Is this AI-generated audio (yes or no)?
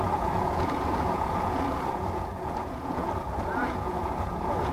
yes